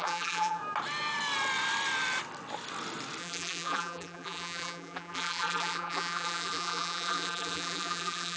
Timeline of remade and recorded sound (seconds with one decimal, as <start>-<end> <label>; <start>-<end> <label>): 0.0-0.6 remade; 0.6-3.2 recorded; 3.2-8.4 remade